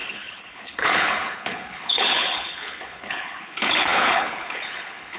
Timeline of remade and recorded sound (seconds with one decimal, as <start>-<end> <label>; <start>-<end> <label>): 0.0-5.2 remade